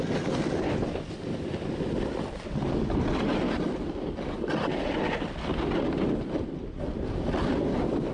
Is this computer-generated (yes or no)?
no